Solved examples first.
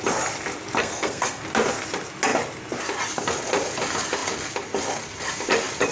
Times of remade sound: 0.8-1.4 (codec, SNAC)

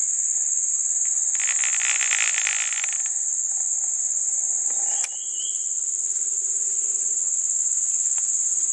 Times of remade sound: 6.4-7.2 (vocoder, BigVGAN v2)

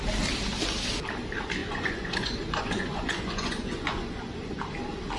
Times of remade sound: 1.6-4.5 (vocoder, Vocos)

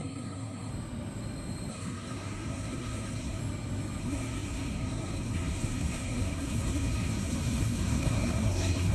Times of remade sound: 0.0-0.7 (codec, SNAC); 1.7-3.4; 4.0-8.9